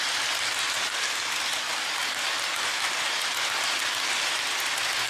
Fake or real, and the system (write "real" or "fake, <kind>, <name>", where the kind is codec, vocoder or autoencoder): real